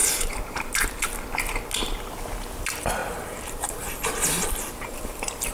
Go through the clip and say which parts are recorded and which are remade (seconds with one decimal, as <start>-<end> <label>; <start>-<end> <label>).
0.0-1.1 remade; 1.1-3.0 recorded; 3.0-5.5 remade